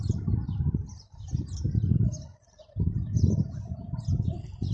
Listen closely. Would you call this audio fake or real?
real